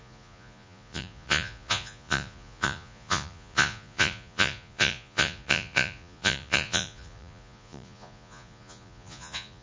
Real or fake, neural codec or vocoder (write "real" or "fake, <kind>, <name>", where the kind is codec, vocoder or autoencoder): fake, vocoder, Vocos